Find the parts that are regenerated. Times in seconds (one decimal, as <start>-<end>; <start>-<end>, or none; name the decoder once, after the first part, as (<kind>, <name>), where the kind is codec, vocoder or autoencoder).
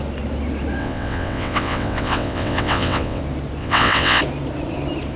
0.8-3.2 (vocoder, WaveNeXt); 3.6-4.2